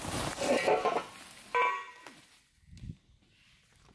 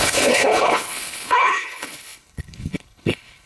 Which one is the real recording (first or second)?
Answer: first